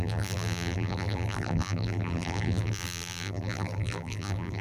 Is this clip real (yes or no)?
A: no